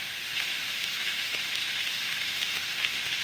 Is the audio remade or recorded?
remade